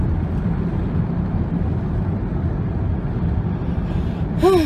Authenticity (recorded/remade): recorded